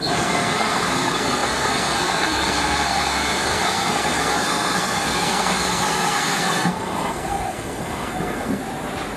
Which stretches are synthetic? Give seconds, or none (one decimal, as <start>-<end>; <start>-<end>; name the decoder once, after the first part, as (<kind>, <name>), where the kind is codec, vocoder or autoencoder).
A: 0.0-8.6 (codec, SNAC)